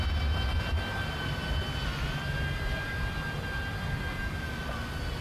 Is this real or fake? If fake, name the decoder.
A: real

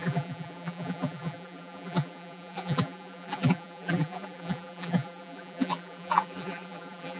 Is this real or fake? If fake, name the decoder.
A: fake, vocoder, BigVGAN v2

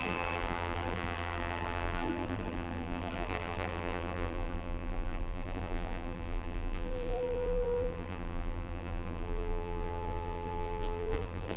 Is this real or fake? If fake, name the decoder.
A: fake, vocoder, BigVGAN v2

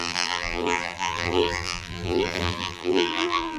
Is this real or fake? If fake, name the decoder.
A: fake, vocoder, BigVGAN v2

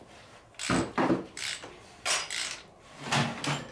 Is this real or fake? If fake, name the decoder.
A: real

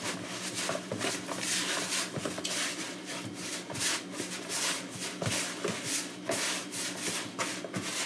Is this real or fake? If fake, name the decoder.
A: real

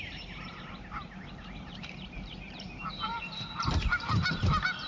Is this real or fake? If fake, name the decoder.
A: fake, vocoder, BigVGAN v2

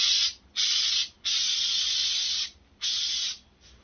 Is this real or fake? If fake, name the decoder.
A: real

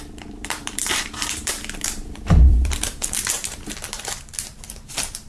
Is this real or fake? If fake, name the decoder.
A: fake, vocoder, BigVGAN v2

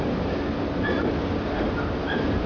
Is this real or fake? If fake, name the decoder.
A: real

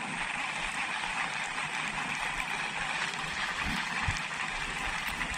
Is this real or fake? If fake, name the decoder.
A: real